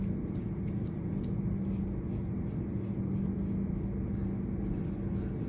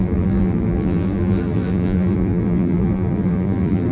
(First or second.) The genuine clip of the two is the first